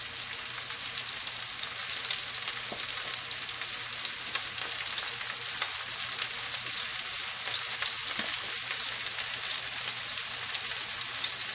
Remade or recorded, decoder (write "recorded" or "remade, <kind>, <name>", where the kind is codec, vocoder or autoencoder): recorded